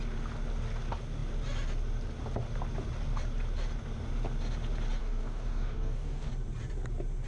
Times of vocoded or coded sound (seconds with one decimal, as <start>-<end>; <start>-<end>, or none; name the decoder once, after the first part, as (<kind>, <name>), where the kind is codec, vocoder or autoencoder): 5.0-6.3 (codec, DAC)